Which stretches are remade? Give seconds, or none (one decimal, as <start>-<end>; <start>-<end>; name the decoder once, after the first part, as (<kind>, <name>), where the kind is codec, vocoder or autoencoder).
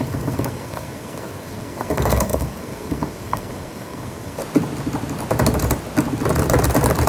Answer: 0.0-4.4 (codec, SNAC)